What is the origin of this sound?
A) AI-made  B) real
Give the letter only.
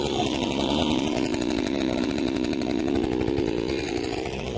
A